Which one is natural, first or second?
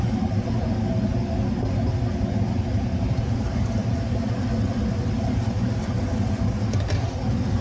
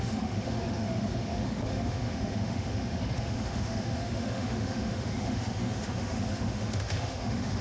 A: first